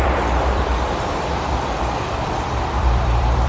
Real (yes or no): no